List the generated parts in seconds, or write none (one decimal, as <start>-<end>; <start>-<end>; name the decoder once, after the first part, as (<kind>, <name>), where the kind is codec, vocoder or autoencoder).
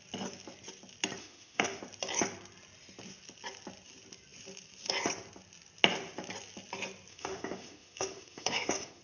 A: 1.2-1.8 (autoencoder, DAC-VAE); 7.1-9.0